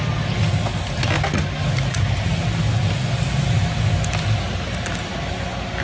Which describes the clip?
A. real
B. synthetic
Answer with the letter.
A